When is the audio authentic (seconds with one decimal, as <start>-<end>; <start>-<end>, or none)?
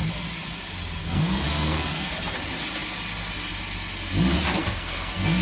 0.0-1.0; 2.1-4.6